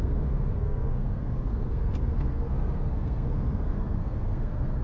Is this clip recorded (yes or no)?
no